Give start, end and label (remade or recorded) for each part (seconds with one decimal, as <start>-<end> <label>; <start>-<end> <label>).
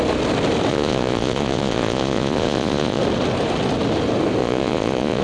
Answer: 0.0-0.7 recorded; 0.7-3.0 remade; 3.0-4.4 recorded; 4.4-5.2 remade